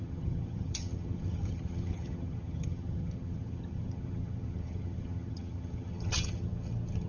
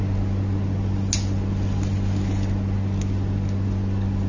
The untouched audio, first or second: second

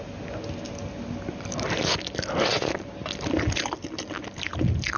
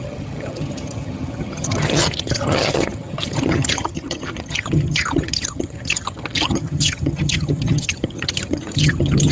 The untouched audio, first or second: first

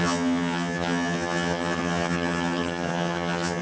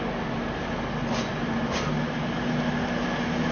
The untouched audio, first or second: second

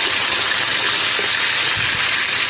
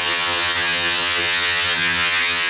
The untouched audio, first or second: first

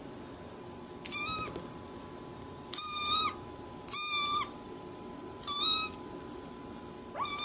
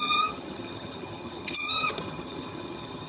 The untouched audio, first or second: first